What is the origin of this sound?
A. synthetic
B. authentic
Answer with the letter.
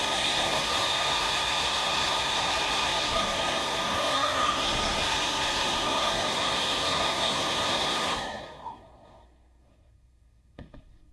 A